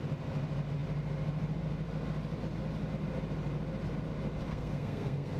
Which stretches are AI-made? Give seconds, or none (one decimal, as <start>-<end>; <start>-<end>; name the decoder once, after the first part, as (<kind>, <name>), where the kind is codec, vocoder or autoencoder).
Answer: 4.5-5.4 (codec, SNAC)